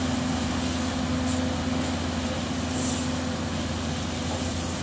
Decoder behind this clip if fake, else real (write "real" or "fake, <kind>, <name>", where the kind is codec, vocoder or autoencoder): real